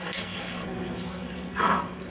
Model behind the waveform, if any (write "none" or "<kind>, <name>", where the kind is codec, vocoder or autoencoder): codec, SNAC